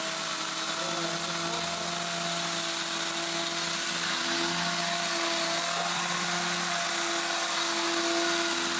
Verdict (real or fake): real